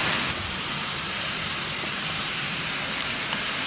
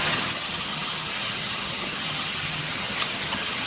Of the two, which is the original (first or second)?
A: first